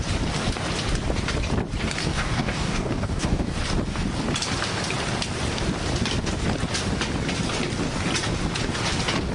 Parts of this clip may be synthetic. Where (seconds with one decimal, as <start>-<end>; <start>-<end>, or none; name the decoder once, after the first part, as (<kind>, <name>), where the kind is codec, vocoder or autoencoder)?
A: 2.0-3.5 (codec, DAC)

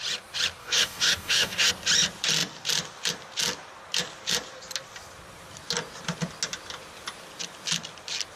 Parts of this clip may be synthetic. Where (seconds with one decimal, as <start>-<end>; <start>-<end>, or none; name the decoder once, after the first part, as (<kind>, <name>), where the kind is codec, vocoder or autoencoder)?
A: 0.6-1.7 (codec, DAC)

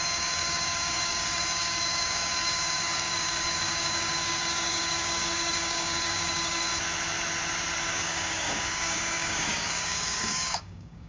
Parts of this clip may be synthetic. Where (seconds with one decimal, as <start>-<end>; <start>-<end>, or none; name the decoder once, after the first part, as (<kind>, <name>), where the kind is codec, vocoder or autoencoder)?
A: 0.0-6.7 (codec, DAC); 7.8-11.1